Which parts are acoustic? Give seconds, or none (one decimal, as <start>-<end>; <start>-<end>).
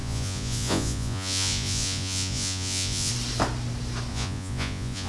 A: 3.1-4.1